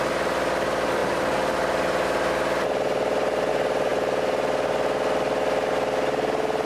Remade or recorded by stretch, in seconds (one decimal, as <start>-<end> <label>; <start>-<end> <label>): 0.0-6.7 recorded